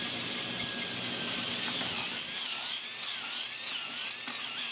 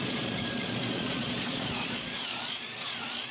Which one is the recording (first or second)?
first